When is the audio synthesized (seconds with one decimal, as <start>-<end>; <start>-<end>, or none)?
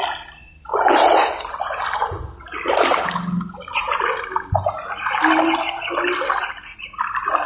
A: none